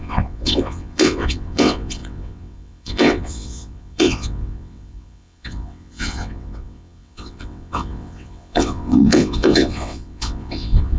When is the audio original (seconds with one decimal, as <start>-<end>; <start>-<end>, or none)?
none

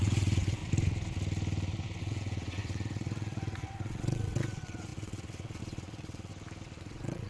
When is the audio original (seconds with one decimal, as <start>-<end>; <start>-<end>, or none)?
0.6-2.0; 6.3-6.8